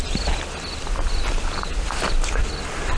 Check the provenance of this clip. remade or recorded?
recorded